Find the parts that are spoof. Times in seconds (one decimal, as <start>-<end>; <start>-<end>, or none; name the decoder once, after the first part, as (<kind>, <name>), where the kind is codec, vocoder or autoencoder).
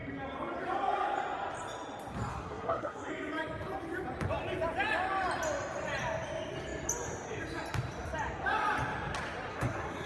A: 2.3-3.1 (codec, SNAC); 9.5-10.1